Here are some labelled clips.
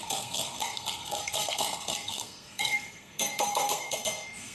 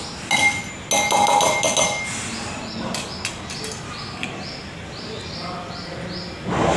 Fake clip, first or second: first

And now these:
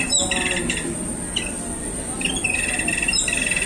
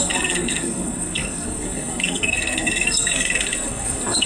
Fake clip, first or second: second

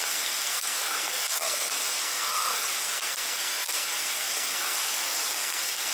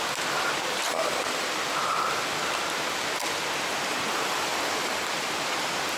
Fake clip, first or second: first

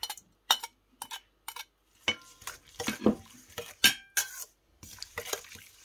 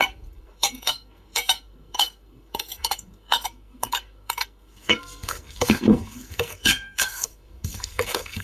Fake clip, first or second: second